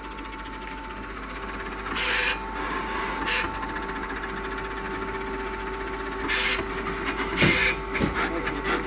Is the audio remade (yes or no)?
no